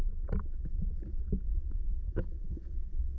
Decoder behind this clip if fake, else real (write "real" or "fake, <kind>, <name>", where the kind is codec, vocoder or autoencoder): fake, vocoder, BigVGAN v2